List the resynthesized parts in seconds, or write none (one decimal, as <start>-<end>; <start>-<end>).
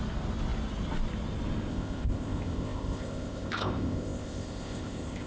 1.7-5.3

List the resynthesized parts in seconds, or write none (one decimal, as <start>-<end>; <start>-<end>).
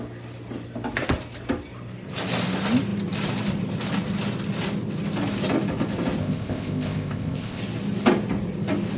6.2-7.6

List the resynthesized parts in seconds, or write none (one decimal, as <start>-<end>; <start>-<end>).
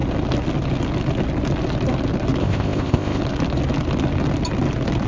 2.4-3.2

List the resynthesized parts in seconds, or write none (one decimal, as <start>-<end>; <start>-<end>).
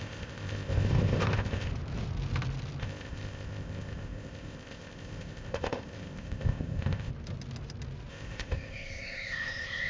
0.0-1.7; 2.8-7.1; 8.1-9.9